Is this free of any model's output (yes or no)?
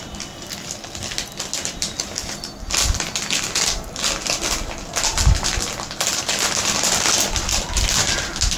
yes